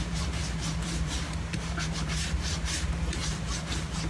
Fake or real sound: fake